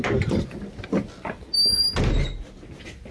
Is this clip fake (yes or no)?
no